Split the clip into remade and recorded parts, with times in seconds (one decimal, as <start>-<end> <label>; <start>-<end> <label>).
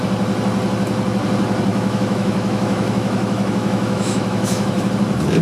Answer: 0.0-1.7 recorded; 1.7-4.9 remade; 4.9-5.4 recorded